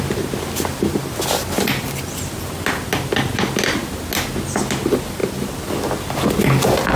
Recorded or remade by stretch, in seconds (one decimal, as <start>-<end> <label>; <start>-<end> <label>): 0.0-7.0 recorded